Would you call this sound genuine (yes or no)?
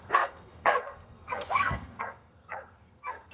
no